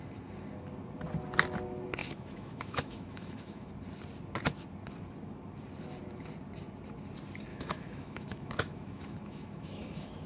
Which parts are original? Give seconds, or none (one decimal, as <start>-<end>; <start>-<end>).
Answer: 0.0-2.0; 3.7-7.5